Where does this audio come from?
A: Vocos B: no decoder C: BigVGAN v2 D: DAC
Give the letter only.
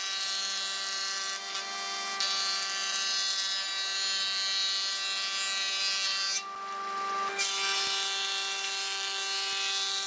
B